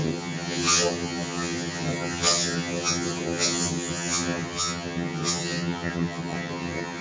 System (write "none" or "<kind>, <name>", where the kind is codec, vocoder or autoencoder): vocoder, HiFi-GAN